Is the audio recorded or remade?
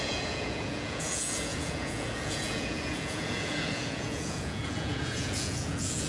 remade